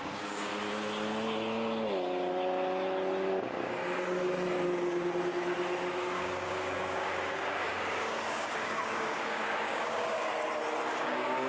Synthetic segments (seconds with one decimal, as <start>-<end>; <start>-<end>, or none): 0.0-0.5; 3.4-3.8; 5.9-10.3; 10.9-11.5